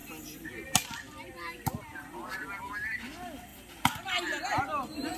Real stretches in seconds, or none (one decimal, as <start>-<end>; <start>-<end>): 0.0-5.2